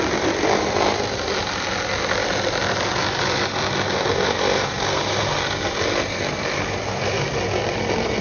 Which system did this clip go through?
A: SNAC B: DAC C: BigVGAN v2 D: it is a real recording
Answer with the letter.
D